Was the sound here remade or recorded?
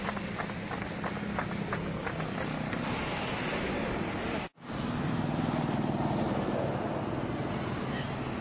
recorded